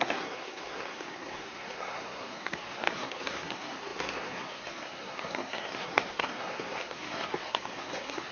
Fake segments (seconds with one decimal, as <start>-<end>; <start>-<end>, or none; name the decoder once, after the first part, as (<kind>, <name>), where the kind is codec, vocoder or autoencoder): 0.0-8.3 (codec, SNAC)